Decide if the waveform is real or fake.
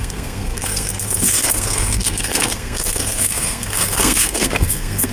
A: fake